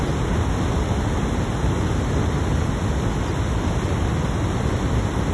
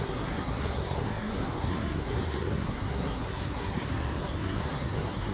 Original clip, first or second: first